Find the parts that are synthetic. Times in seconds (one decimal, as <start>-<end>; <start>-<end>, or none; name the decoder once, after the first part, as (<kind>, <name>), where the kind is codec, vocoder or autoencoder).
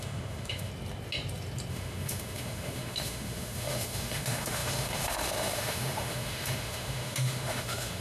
0.0-0.7 (autoencoder, DAC-VAE); 1.7-8.0